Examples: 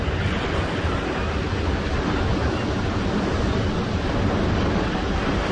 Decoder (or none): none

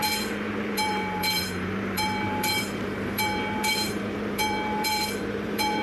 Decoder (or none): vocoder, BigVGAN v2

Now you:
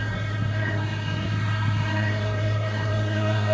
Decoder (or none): codec, SNAC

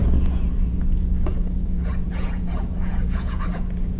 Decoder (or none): vocoder, Vocos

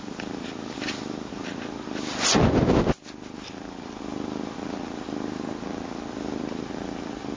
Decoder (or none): none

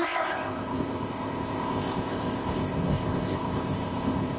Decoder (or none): codec, ZipCodec